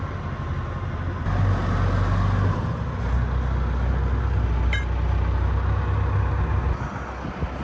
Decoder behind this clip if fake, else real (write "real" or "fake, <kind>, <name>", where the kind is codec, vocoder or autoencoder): real